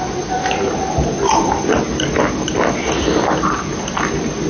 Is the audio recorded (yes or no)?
yes